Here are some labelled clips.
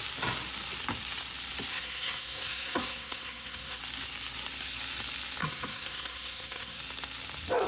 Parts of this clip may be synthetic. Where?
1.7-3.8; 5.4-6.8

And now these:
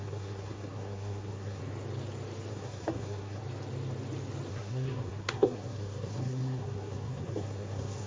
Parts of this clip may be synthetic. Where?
0.0-1.6; 2.5-3.4; 4.5-8.1

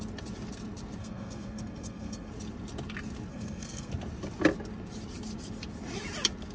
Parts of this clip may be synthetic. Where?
1.0-2.3; 3.3-3.9

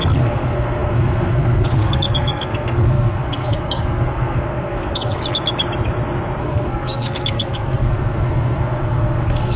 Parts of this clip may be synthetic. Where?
0.0-5.2; 6.4-9.6